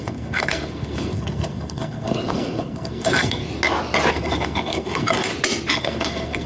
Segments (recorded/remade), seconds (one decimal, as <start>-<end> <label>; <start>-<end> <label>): 0.0-3.4 remade; 3.4-4.1 recorded; 4.1-5.3 remade; 5.3-5.8 recorded; 5.8-6.5 remade